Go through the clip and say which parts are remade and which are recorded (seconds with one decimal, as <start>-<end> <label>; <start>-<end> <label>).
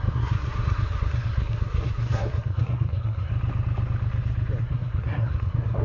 0.0-3.3 remade; 3.3-4.6 recorded; 4.6-5.8 remade